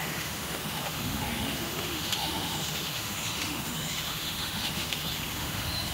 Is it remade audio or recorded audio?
remade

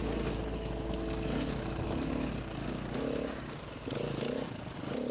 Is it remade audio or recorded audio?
recorded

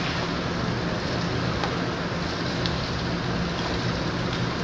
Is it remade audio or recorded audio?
recorded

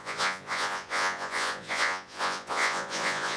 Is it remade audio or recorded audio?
remade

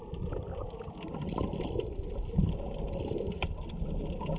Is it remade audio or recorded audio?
recorded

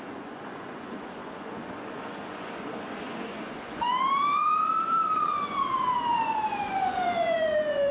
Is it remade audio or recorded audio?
remade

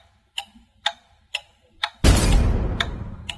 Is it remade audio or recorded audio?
remade